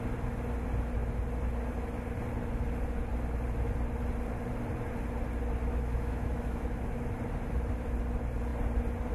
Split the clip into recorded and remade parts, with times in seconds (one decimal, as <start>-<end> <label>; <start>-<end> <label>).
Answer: 0.0-5.7 recorded; 5.7-7.1 remade; 7.1-9.1 recorded